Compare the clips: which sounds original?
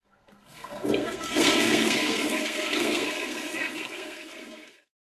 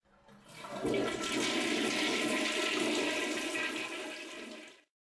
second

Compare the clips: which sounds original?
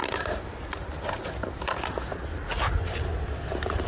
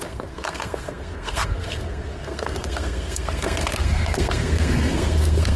first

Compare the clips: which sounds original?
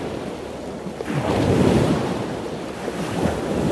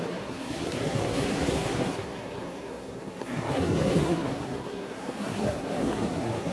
first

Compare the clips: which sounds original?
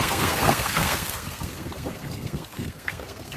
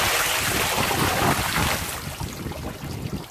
second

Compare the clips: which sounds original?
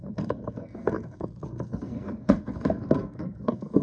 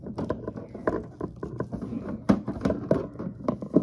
second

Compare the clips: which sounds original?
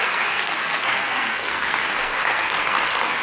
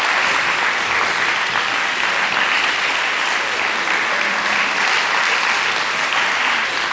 second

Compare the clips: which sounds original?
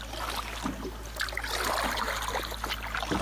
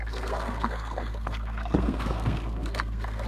first